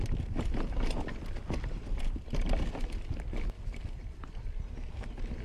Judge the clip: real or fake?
real